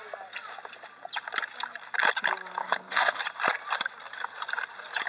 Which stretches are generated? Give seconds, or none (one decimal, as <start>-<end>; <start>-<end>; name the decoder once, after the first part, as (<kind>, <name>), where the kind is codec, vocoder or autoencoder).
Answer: 2.6-3.2 (codec, SNAC)